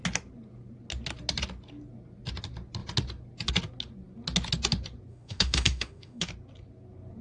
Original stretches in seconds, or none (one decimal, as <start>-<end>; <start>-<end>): 0.0-5.1; 6.3-7.2